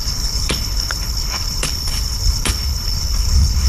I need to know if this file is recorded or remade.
remade